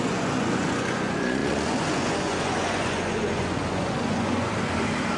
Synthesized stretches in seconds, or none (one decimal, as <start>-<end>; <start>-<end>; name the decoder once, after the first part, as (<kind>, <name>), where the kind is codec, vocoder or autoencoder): 0.0-4.5 (vocoder, Vocos)